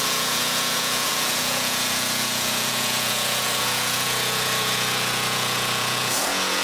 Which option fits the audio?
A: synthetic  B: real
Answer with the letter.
A